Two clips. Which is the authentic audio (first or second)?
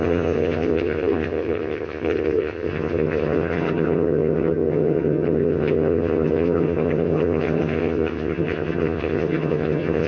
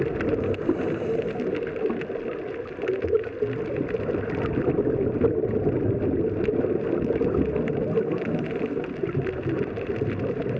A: second